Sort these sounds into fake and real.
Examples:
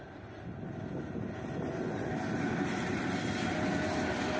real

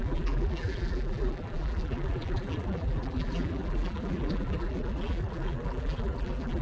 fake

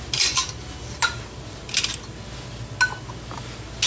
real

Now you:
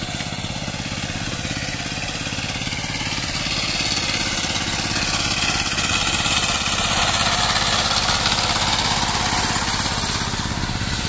real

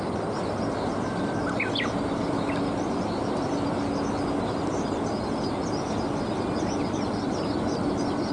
real